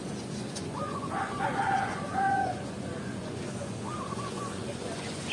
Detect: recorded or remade remade